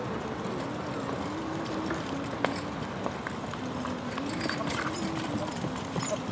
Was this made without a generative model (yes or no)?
yes